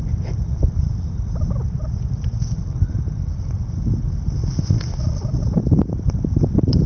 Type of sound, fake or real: real